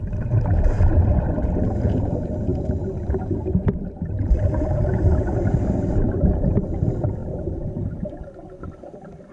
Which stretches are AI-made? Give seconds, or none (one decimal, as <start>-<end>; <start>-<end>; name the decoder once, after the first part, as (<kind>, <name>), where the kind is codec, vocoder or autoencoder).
none